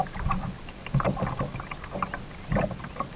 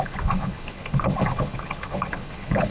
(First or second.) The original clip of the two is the first